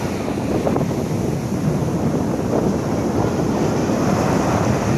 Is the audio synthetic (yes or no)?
no